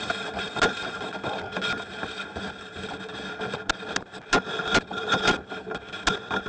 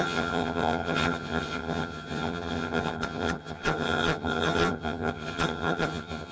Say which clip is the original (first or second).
first